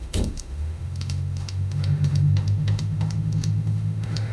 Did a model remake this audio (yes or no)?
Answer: yes